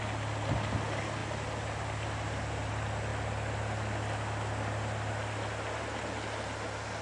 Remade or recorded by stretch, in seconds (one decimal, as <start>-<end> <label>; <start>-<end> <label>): 0.0-7.0 recorded